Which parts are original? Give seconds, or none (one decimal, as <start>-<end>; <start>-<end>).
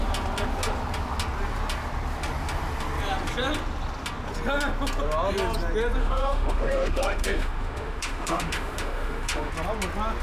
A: 0.0-6.0; 9.5-10.2